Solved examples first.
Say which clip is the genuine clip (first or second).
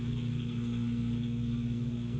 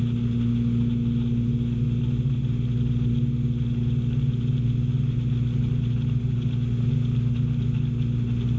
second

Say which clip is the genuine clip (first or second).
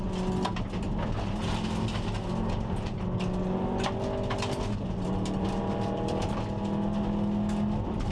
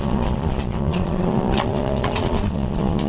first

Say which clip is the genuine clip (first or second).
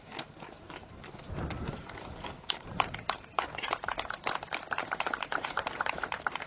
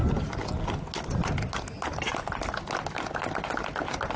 second